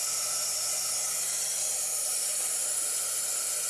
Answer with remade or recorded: recorded